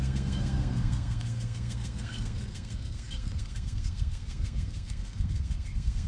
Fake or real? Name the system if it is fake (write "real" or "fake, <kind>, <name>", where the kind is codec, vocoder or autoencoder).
fake, codec, SNAC